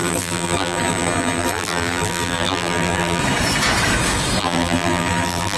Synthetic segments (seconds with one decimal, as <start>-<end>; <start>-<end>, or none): 0.0-3.2; 4.4-5.6